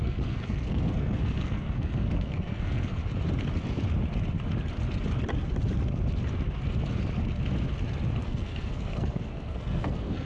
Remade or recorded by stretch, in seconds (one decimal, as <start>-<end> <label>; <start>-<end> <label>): 0.0-3.0 remade; 3.0-8.2 recorded; 8.2-10.3 remade